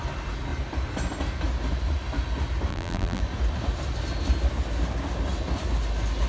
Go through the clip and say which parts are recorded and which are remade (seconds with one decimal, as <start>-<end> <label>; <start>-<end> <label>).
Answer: 0.0-2.7 recorded; 2.7-3.2 remade; 3.2-6.3 recorded